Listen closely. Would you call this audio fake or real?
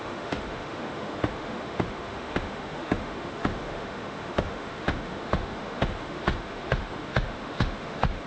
fake